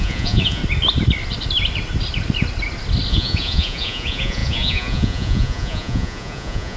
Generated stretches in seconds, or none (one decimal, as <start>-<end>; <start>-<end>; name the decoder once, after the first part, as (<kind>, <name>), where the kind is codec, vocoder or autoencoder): 0.0-0.6 (vocoder, Vocos); 3.1-6.8